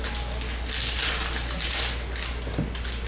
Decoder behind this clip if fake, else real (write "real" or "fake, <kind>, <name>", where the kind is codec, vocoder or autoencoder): real